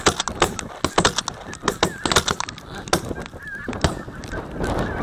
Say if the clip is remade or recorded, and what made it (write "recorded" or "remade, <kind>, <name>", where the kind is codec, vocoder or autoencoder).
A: recorded